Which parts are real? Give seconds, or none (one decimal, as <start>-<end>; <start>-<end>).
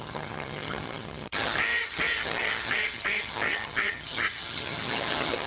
none